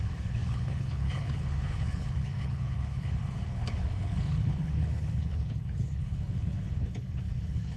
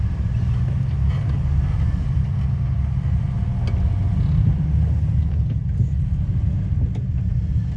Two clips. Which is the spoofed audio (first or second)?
first